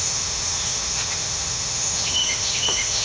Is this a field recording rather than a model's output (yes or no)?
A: no